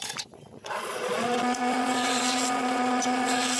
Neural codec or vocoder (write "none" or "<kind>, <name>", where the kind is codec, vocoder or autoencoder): vocoder, Vocos